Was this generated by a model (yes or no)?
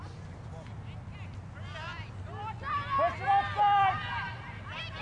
no